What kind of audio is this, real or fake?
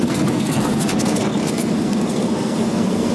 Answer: fake